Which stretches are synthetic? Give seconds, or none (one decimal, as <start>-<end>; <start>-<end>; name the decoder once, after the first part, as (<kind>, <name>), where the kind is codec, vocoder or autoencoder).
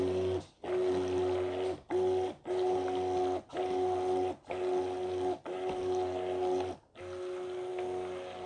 none